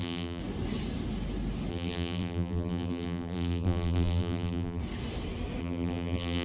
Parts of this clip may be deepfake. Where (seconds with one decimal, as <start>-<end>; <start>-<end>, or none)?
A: 0.0-0.4; 1.7-4.8; 5.6-6.4